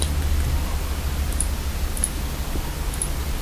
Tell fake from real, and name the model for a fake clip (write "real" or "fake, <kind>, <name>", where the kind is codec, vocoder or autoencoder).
real